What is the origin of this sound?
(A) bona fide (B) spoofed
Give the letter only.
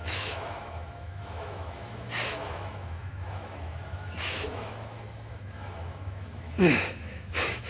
B